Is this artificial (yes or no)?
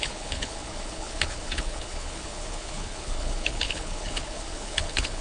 yes